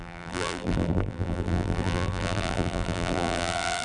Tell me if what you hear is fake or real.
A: fake